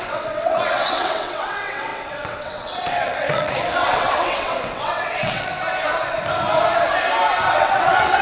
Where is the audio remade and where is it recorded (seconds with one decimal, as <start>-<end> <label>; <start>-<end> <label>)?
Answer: 0.0-5.5 remade; 5.5-7.5 recorded; 7.5-8.2 remade